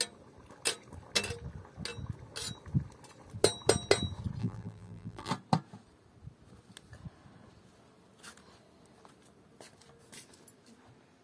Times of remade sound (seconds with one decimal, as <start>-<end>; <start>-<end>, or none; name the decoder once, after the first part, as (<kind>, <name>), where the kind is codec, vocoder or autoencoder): 4.4-5.3 (vocoder, BigVGAN v2)